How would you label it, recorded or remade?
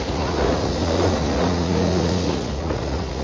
remade